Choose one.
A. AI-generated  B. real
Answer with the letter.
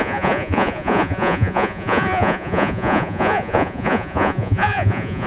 A